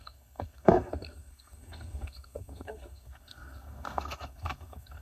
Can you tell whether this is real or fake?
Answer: fake